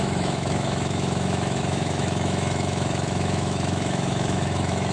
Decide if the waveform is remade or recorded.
remade